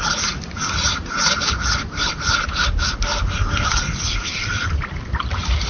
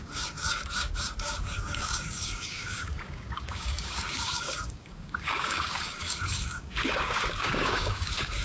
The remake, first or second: second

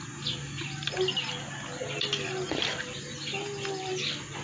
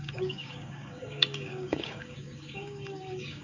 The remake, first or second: second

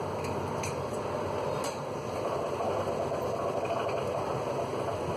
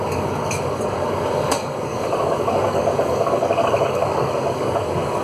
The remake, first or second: second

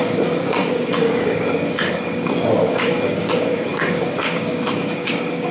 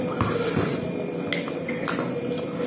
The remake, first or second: first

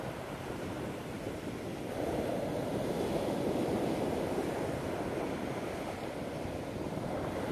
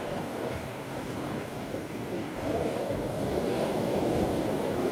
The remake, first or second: second